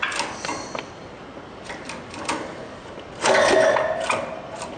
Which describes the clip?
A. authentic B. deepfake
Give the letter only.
A